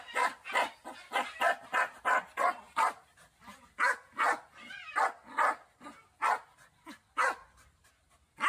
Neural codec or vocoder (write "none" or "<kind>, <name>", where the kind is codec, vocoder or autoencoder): none